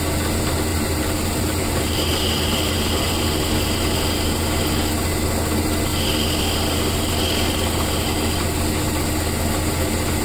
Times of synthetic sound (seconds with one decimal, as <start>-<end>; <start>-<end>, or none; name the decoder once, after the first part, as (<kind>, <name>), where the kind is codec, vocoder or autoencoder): 0.7-3.1 (vocoder, BigVGAN v2)